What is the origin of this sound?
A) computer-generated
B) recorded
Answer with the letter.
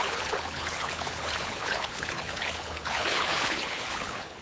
A